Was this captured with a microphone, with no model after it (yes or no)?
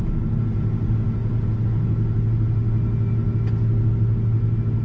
yes